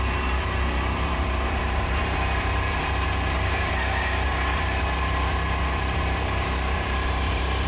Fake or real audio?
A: fake